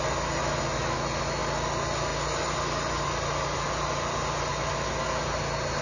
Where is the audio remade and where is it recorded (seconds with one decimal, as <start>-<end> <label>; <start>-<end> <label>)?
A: 0.0-5.8 recorded